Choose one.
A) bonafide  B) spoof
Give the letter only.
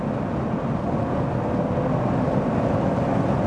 A